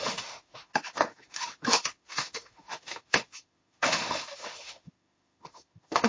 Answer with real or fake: fake